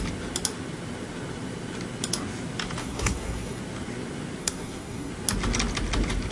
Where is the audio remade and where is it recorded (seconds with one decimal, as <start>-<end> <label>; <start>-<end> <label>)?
0.0-2.8 recorded; 2.8-3.6 remade; 3.6-4.4 recorded; 4.4-5.1 remade; 5.1-6.3 recorded